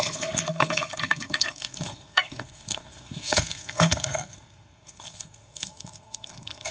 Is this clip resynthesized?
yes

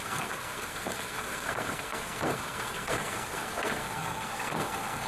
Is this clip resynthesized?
yes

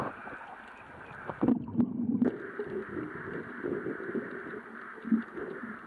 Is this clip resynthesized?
no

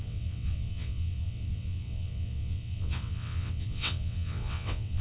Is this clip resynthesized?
yes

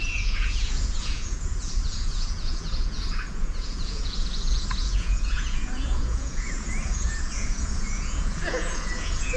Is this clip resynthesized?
yes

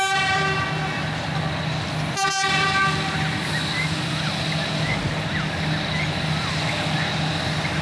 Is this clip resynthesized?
no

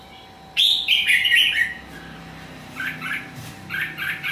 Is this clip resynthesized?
yes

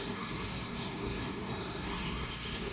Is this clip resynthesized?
yes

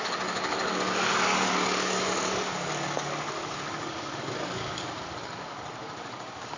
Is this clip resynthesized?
yes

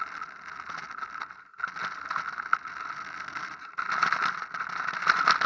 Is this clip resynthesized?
no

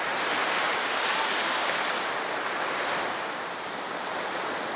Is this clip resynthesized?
yes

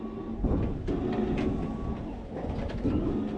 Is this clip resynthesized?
no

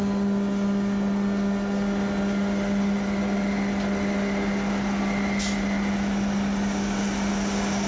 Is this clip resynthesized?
no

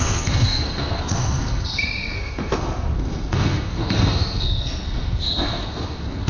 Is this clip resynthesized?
yes